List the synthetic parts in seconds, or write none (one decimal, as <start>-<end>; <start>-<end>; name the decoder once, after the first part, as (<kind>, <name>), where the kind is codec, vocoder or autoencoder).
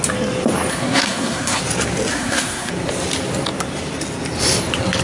0.7-1.6 (codec, SNAC); 2.1-2.7